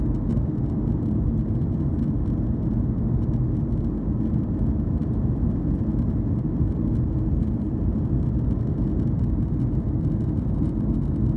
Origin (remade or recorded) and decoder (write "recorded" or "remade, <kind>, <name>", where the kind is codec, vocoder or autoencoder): recorded